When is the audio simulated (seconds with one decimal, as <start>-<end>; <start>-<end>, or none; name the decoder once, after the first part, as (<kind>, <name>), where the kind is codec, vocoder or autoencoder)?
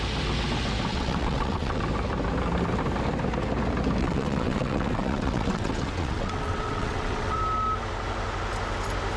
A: 0.9-1.8 (vocoder, WaveNeXt); 4.0-7.4